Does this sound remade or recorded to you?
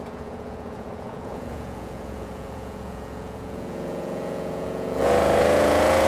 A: remade